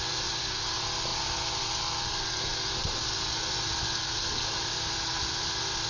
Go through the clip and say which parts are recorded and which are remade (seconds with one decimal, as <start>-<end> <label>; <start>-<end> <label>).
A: 0.0-5.9 recorded